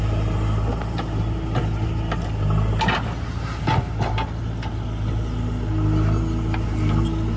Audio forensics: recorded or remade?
recorded